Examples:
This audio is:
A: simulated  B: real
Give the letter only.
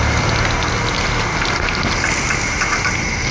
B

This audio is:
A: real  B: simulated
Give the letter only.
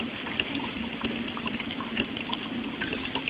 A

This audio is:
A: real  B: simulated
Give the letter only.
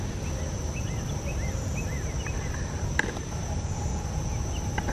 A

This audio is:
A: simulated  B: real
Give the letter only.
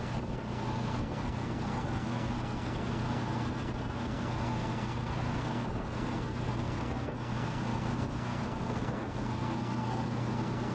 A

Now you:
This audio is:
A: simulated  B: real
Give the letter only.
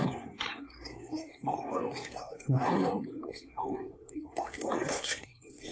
A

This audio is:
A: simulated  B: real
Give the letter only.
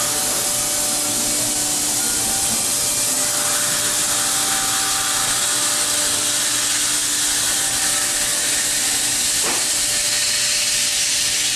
B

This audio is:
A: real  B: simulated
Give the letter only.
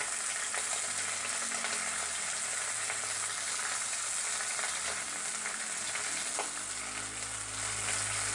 A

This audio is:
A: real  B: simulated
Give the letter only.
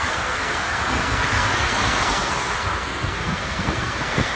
B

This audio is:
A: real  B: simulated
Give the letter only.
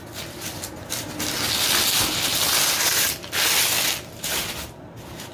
A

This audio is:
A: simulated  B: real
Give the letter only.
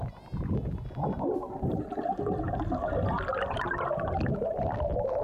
B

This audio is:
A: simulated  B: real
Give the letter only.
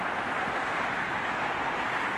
B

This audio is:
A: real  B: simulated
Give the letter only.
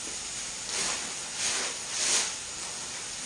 A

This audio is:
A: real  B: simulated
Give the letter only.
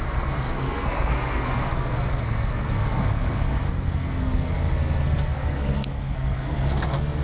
B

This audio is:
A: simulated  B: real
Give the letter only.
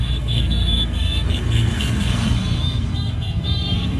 A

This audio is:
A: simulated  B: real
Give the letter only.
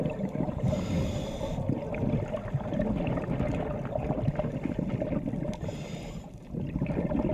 B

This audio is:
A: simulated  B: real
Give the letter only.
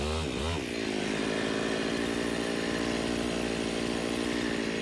B